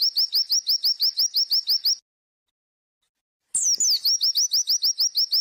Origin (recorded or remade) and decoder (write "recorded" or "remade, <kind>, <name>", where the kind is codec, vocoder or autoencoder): recorded